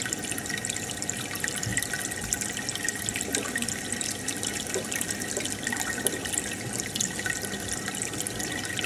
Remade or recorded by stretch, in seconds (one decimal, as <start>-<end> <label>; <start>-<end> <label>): 0.0-8.9 recorded